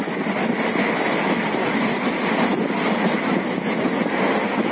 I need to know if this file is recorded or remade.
recorded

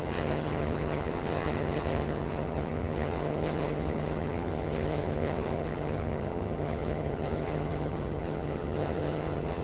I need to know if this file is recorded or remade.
remade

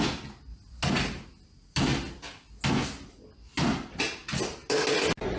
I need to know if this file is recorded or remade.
recorded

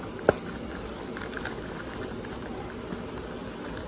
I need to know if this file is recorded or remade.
recorded